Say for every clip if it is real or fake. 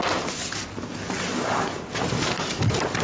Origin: real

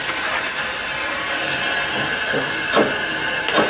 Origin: real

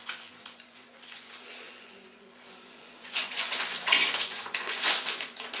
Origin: fake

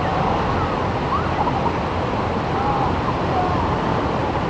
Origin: real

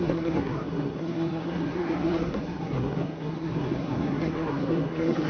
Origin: fake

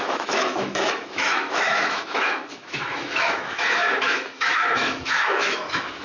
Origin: fake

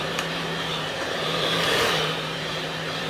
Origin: fake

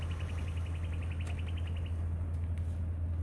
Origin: real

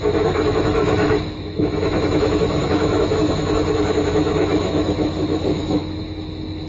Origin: fake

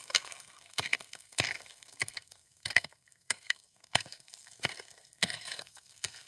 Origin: fake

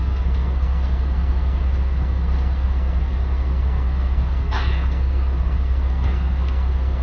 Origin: fake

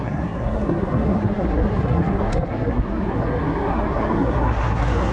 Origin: fake